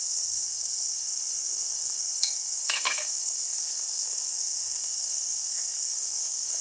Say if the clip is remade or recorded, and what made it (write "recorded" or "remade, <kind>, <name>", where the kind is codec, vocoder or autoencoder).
remade, codec, SNAC